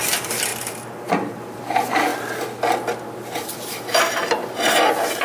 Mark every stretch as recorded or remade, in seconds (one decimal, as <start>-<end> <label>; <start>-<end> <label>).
0.0-0.5 remade; 0.5-1.1 recorded; 1.1-2.1 remade; 2.1-3.9 recorded; 3.9-4.4 remade; 4.4-5.2 recorded

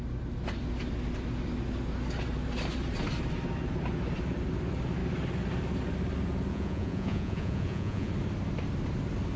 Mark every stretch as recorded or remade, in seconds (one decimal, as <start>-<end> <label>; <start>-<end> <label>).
0.0-6.5 recorded; 6.5-8.1 remade; 8.1-9.4 recorded

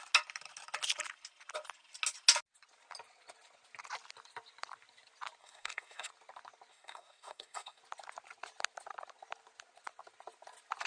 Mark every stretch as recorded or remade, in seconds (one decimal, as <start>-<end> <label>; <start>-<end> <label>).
0.0-5.4 recorded; 5.4-6.1 remade; 6.1-6.7 recorded; 6.7-7.8 remade; 7.8-10.9 recorded

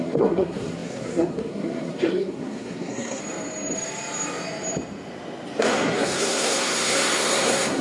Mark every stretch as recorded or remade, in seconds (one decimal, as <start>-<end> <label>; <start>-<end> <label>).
0.0-3.2 remade; 3.2-5.6 recorded; 5.6-7.8 remade

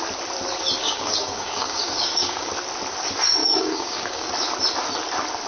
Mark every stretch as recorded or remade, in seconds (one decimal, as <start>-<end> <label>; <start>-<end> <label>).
0.0-0.8 recorded; 0.8-2.5 remade; 2.5-3.4 recorded; 3.4-4.3 remade; 4.3-5.5 recorded

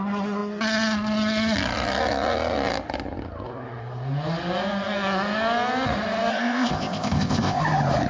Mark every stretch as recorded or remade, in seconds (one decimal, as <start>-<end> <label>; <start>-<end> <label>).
0.0-6.3 recorded; 6.3-7.6 remade; 7.6-8.1 recorded